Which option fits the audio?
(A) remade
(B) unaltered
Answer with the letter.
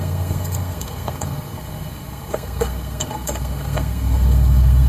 A